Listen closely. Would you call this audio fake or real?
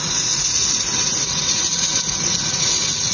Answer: fake